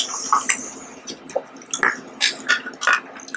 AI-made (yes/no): no